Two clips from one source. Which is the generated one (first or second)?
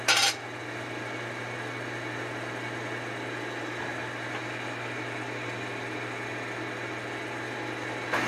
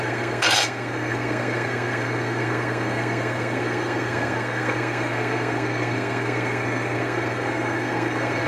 second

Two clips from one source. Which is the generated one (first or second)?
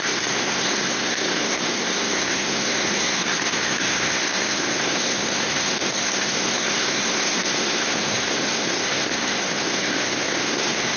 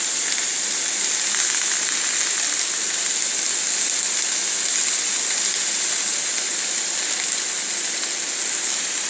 first